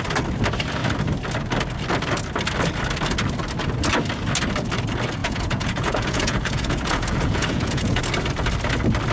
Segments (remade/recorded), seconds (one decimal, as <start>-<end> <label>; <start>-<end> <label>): 0.0-5.2 recorded; 5.2-8.0 remade; 8.0-9.1 recorded